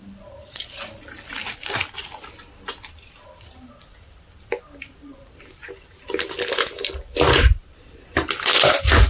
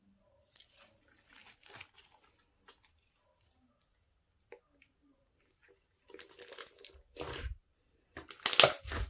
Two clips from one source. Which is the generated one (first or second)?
first